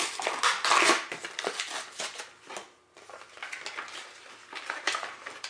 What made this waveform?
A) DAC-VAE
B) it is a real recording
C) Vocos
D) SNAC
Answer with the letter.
B